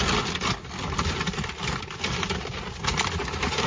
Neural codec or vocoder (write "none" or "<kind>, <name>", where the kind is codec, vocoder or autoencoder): none